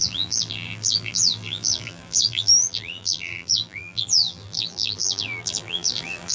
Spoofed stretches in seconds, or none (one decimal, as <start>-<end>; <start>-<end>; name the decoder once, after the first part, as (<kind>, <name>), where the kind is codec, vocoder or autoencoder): 0.0-6.3 (vocoder, BigVGAN v2)